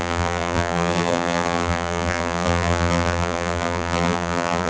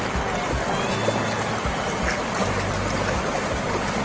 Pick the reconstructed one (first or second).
first